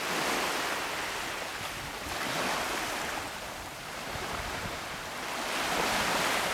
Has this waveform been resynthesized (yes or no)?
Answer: no